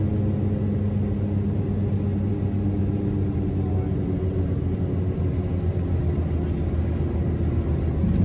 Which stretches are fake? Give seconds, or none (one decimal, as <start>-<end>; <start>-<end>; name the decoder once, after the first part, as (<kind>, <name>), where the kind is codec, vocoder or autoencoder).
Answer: none